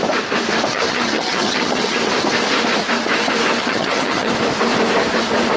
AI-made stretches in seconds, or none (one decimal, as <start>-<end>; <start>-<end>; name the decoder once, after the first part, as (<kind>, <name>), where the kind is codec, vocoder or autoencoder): 0.7-2.0 (vocoder, HiFi-GAN); 3.6-4.3